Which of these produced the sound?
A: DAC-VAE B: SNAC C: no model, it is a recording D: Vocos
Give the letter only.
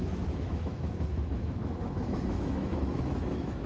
A